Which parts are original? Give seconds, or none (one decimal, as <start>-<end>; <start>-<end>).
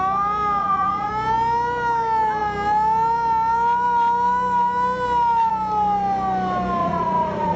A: 0.0-0.6; 1.1-6.8